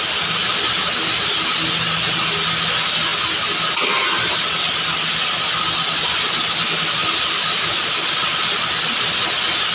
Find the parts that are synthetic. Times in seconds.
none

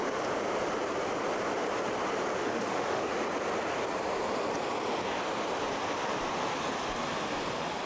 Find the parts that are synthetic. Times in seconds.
2.4-3.0 (autoencoder, DAC-VAE)

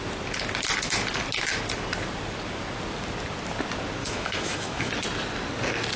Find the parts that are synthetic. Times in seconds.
4.0-4.9 (autoencoder, DAC-VAE)

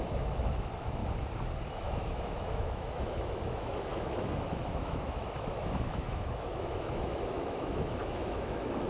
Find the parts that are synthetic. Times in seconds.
0.0-1.0 (autoencoder, DAC-VAE); 1.7-8.9

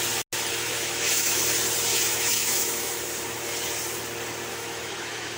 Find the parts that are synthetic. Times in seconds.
0.5-1.4 (autoencoder, DAC-VAE); 1.9-3.0; 4.5-5.4

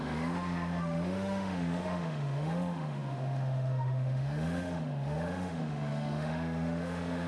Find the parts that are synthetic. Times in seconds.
0.0-7.3 (autoencoder, DAC-VAE)